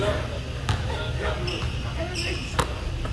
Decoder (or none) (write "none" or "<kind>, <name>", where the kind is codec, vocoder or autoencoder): none